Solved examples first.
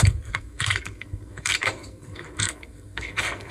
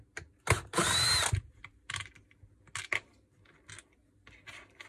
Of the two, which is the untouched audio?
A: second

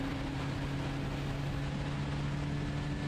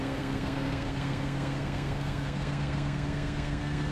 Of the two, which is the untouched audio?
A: first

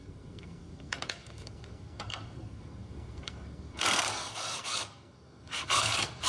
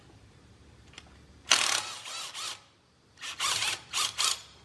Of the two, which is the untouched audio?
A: second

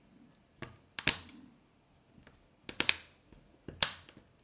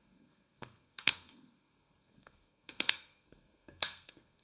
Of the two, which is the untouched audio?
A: first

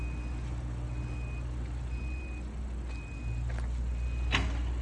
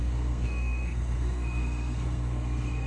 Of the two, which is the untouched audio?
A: first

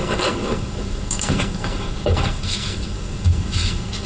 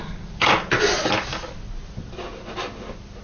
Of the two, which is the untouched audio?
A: second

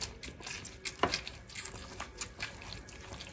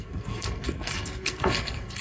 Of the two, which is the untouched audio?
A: first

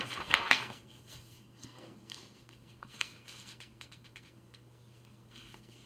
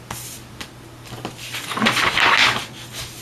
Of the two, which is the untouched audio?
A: second